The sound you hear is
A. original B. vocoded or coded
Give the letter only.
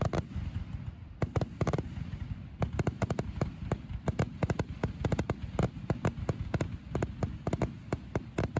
A